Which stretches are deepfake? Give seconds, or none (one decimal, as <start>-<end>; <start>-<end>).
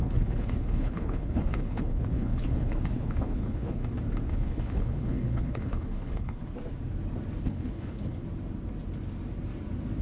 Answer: 0.0-3.8; 4.3-6.4; 7.4-8.2